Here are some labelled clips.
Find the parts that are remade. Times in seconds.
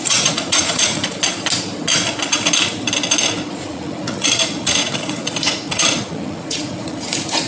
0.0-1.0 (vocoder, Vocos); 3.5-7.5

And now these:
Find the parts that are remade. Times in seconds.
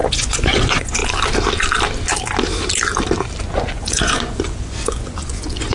0.0-1.0 (vocoder, Vocos); 3.4-5.7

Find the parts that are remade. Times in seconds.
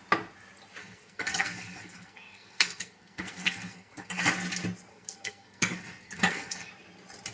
0.8-4.3 (codec, SNAC); 4.9-6.7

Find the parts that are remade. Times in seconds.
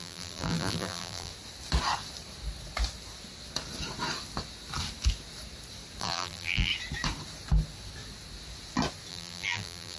0.0-1.3 (vocoder, BigVGAN v2); 6.0-6.7; 9.1-10.0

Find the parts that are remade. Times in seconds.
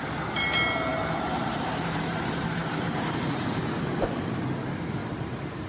0.9-4.3 (vocoder, BigVGAN v2); 5.0-5.7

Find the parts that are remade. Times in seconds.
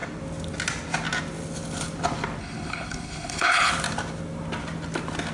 2.4-3.7 (codec, HILCodec)